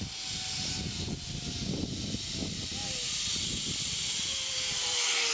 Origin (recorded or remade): recorded